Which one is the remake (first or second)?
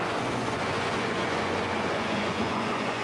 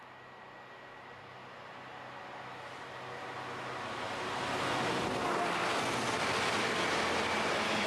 first